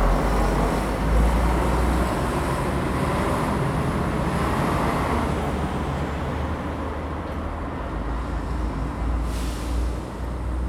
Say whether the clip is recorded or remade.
recorded